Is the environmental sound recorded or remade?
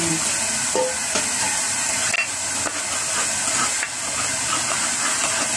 recorded